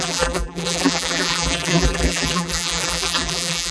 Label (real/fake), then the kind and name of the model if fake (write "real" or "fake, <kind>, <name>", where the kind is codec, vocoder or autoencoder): fake, vocoder, BigVGAN v2